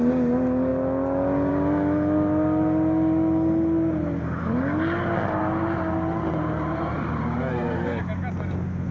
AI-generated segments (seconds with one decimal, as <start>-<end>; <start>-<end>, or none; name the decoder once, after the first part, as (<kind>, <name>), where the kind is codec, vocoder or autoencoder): none